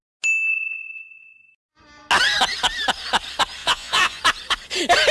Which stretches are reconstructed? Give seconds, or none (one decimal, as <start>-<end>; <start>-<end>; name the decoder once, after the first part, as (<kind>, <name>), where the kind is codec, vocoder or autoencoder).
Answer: 0.5-1.5 (vocoder, Vocos); 3.6-4.2